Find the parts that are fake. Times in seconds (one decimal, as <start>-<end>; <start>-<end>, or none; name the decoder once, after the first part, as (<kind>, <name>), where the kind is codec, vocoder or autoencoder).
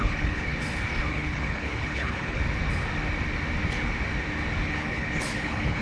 0.0-0.5 (codec, HILCodec); 1.1-2.4; 4.6-5.8